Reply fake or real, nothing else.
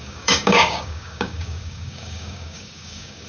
fake